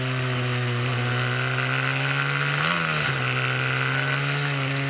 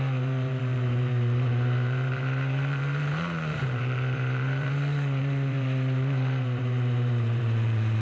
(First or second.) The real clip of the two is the first